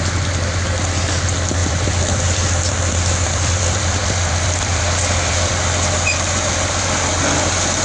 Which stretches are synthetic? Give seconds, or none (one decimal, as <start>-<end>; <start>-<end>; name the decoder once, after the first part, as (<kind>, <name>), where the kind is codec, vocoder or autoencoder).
1.6-5.5 (vocoder, BigVGAN v2)